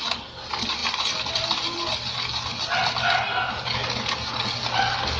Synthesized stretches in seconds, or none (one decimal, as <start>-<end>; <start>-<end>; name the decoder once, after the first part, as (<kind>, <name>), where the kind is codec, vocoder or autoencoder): none